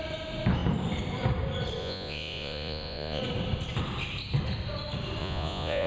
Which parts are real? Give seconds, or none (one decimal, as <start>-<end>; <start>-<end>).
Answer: 0.0-1.8; 3.2-5.2